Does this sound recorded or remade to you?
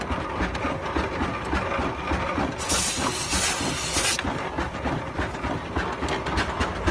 recorded